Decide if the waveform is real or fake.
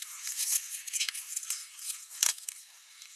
fake